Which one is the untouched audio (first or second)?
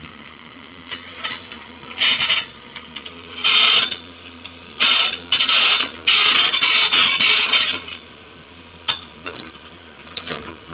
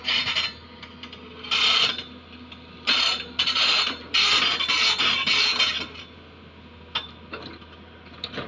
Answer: second